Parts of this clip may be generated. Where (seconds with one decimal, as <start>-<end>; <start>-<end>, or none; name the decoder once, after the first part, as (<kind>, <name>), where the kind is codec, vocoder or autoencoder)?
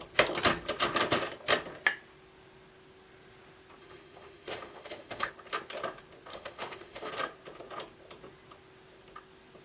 3.8-5.3 (autoencoder, DAC-VAE); 6.3-7.1